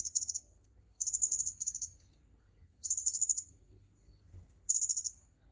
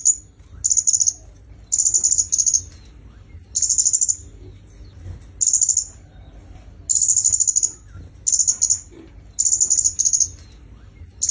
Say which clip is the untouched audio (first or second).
second